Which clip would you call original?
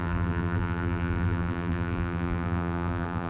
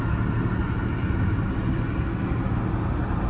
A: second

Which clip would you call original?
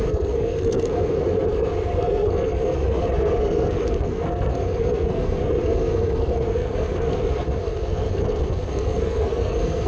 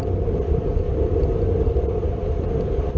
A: second